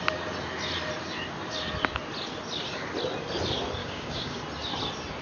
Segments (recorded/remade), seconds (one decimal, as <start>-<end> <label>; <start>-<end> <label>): 0.0-3.8 recorded; 3.8-4.4 remade; 4.4-5.2 recorded